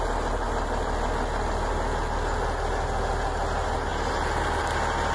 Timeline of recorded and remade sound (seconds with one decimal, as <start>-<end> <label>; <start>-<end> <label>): 0.0-5.1 recorded